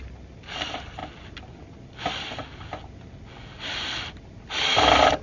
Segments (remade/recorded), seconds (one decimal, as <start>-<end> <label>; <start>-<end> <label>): 0.0-5.2 recorded